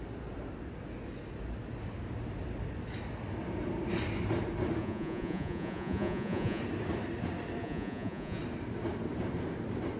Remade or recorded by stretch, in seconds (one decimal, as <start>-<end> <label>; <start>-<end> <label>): 0.0-4.8 recorded; 4.8-6.6 remade; 6.6-7.6 recorded; 7.6-8.4 remade; 8.4-10.0 recorded